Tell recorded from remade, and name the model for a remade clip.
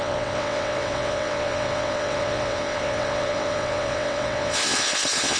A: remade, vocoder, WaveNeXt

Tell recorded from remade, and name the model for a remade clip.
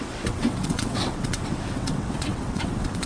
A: remade, vocoder, WaveNeXt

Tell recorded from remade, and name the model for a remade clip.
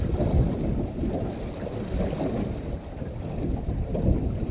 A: recorded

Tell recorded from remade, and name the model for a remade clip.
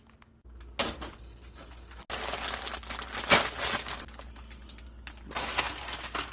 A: recorded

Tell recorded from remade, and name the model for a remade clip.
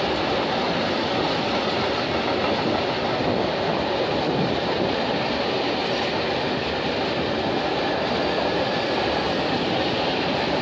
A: recorded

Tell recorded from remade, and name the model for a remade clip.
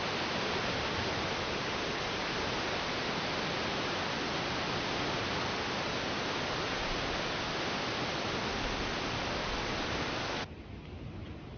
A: recorded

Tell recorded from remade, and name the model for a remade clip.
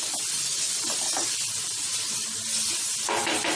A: recorded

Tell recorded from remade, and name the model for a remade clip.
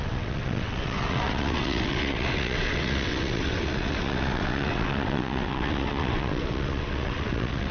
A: remade, vocoder, WaveNeXt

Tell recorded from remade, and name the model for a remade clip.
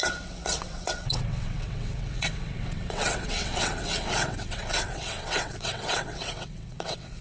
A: remade, vocoder, WaveNeXt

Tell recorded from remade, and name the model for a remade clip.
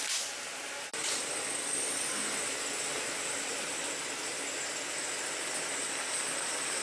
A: recorded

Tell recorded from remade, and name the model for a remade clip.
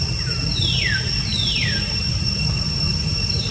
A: recorded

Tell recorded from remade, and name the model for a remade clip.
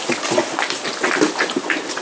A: recorded